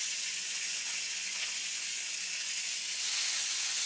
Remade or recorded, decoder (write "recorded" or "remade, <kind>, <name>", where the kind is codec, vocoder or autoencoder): remade, vocoder, Vocos